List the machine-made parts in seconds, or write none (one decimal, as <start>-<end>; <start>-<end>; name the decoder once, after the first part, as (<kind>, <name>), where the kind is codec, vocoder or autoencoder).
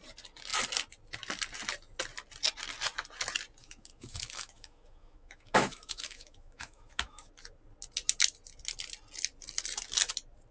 3.6-7.3 (autoencoder, DAC-VAE)